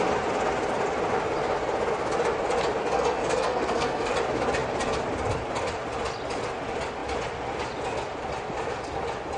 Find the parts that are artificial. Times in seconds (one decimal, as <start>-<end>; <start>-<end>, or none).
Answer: 2.8-4.1